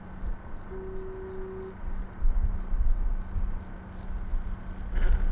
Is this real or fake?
real